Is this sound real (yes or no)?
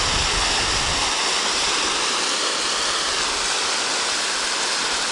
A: yes